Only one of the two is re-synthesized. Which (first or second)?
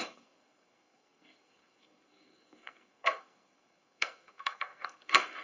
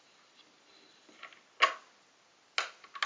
first